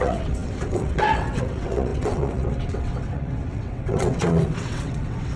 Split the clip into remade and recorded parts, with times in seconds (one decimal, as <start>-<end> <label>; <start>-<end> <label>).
0.0-5.4 remade